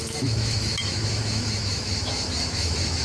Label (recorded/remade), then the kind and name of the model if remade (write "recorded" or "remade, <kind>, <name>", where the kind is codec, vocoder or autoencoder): remade, autoencoder, DAC-VAE